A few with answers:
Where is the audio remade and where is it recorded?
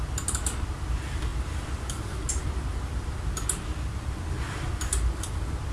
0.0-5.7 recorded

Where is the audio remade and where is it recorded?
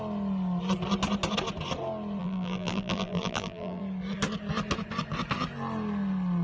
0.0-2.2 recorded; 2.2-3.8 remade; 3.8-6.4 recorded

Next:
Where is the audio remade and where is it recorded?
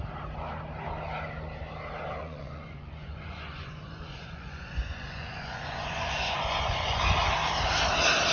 0.0-2.2 recorded; 2.2-7.0 remade; 7.0-8.3 recorded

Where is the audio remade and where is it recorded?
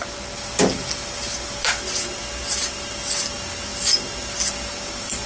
0.0-5.3 recorded